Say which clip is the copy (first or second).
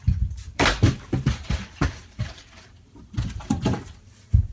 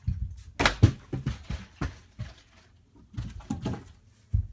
first